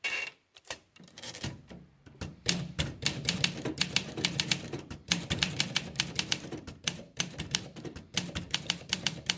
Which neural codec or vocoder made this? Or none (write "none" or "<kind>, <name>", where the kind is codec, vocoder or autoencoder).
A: vocoder, BigVGAN v2